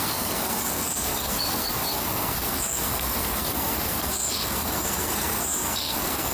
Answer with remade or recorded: remade